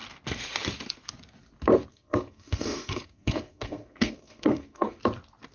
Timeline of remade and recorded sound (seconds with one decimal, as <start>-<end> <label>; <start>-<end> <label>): 0.0-1.9 recorded; 1.9-5.0 remade; 5.0-5.5 recorded